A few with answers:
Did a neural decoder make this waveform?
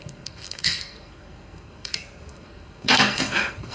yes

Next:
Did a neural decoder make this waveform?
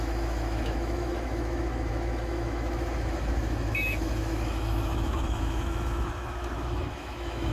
yes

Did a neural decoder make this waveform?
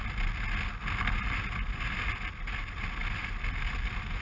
no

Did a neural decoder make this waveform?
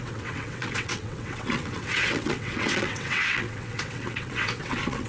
yes